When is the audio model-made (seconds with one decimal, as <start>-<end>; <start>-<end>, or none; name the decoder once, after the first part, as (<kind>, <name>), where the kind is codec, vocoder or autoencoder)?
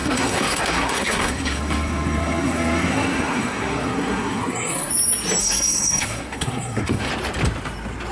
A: 0.0-4.9 (codec, SNAC); 5.4-7.1